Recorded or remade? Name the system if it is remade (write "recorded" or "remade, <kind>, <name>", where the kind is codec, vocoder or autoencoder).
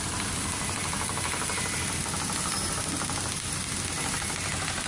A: recorded